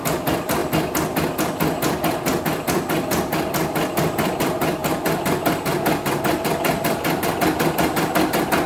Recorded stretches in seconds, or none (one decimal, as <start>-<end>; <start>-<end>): 0.0-8.7